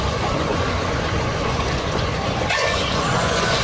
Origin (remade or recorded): remade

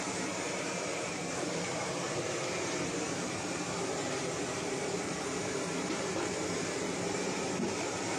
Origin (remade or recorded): remade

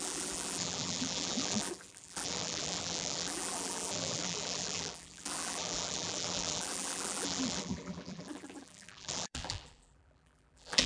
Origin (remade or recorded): remade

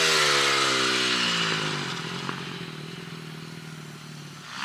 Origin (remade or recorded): recorded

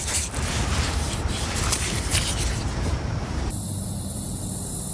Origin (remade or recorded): remade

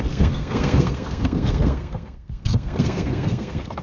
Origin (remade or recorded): remade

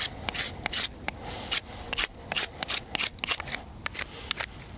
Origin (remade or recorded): recorded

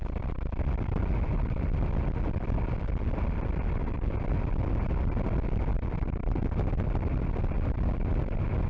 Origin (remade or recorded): recorded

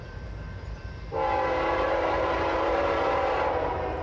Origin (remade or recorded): remade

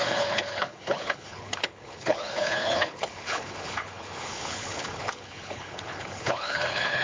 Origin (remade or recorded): remade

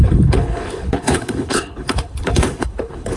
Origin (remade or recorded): remade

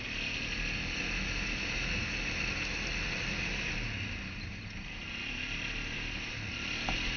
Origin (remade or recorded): recorded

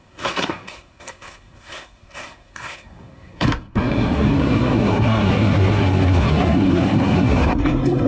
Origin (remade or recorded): remade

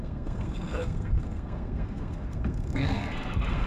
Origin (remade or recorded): remade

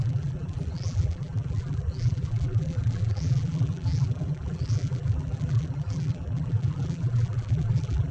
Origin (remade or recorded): remade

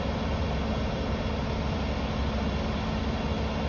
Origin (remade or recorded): recorded